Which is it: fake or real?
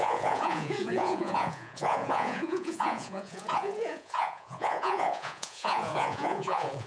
fake